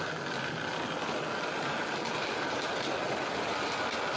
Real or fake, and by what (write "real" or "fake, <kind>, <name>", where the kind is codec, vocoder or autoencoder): real